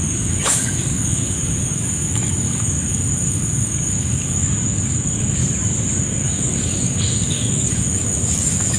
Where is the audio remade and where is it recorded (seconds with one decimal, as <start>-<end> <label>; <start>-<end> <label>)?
0.0-5.4 remade; 5.4-6.0 recorded; 6.0-8.8 remade